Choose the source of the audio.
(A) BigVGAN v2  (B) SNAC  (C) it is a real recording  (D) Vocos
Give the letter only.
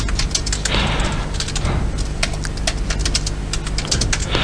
C